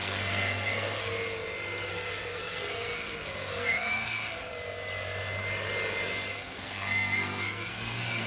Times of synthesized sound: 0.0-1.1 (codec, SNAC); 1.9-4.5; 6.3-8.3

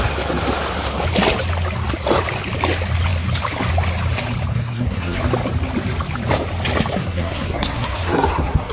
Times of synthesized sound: 4.5-5.2 (codec, SNAC); 7.0-8.7

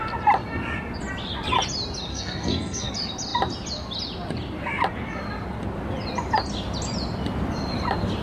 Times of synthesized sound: 2.1-2.9 (codec, SNAC)

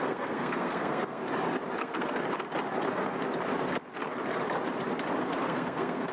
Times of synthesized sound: 0.0-1.2 (codec, SNAC); 1.8-2.2; 5.4-6.1